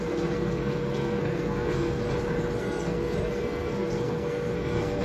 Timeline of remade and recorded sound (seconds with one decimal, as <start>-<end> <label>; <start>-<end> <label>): 0.0-2.0 remade; 2.0-2.6 recorded; 2.6-5.0 remade